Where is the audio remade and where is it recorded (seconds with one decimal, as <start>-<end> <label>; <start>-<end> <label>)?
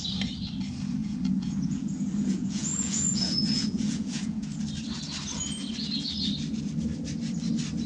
0.0-1.0 recorded; 1.0-4.6 remade; 4.6-7.9 recorded